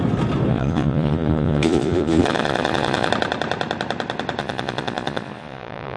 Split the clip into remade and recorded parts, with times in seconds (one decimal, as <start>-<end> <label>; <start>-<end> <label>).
0.0-0.5 recorded; 0.5-3.1 remade; 3.1-4.4 recorded; 4.4-6.0 remade